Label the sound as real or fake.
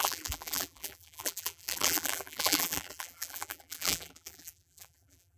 fake